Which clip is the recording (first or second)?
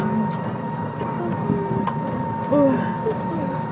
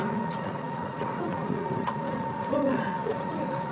first